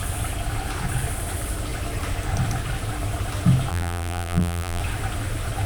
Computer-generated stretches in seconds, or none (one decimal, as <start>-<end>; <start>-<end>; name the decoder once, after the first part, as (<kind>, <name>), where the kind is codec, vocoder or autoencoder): 3.7-4.8 (vocoder, BigVGAN v2)